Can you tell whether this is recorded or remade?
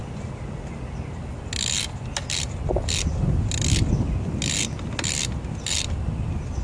recorded